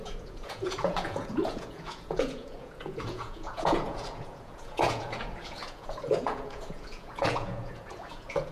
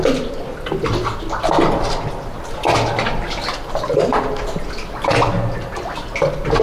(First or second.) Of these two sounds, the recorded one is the second